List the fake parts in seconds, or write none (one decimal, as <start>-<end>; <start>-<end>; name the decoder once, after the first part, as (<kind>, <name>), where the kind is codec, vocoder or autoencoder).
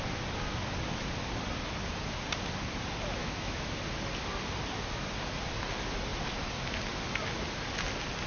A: 3.2-3.8 (autoencoder, DAC-VAE)